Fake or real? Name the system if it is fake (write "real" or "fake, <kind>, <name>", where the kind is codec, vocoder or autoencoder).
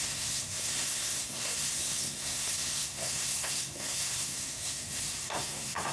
fake, codec, SNAC